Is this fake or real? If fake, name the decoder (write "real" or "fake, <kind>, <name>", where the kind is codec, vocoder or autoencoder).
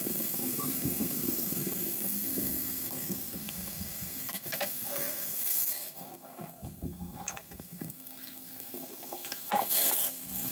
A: fake, codec, SNAC